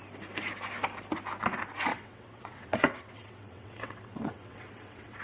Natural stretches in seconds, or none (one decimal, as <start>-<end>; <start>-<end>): 0.0-1.9